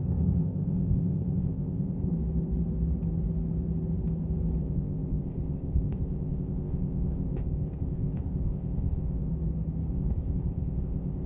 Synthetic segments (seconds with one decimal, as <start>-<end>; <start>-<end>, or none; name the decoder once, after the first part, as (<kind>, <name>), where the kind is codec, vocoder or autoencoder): 0.0-2.1 (codec, ZipCodec); 4.6-9.3; 9.9-11.3